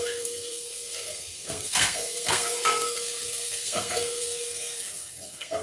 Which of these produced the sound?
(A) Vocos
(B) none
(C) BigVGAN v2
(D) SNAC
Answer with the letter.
D